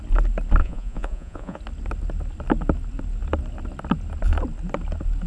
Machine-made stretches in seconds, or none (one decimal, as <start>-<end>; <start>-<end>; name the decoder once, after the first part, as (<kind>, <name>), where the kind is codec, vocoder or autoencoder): 0.6-1.6 (vocoder, Vocos)